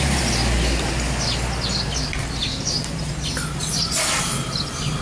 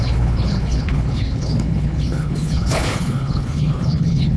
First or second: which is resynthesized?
second